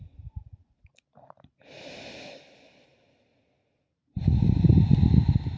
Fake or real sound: real